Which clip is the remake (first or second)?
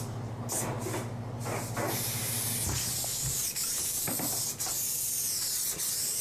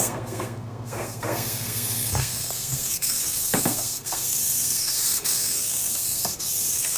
second